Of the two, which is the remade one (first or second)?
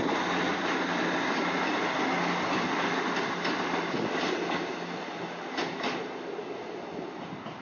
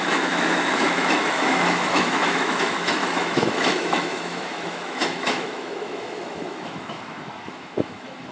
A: second